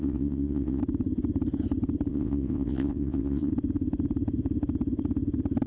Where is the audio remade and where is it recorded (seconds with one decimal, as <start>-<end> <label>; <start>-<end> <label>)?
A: 0.0-0.8 remade; 0.8-2.1 recorded; 2.1-3.5 remade; 3.5-5.7 recorded